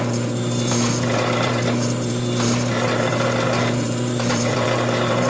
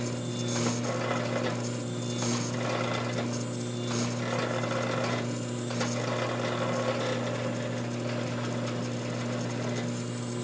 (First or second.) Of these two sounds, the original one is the second